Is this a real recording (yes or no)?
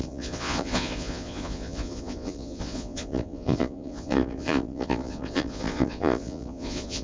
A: no